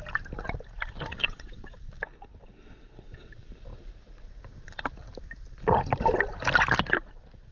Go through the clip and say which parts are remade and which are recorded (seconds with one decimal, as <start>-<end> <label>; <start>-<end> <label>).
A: 0.0-1.1 recorded; 1.1-1.8 remade; 1.8-2.4 recorded; 2.4-3.3 remade; 3.3-7.5 recorded